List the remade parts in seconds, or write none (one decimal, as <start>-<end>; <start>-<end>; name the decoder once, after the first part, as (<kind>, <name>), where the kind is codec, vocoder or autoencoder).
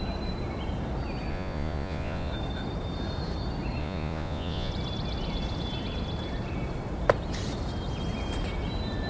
1.3-2.3 (vocoder, Vocos); 3.8-4.7